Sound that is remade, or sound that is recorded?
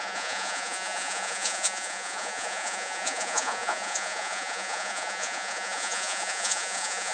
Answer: remade